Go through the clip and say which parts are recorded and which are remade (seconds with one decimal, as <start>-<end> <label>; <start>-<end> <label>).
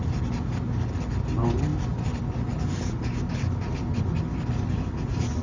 0.0-5.4 recorded